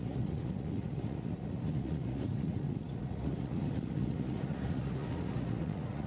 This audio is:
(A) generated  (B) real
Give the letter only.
A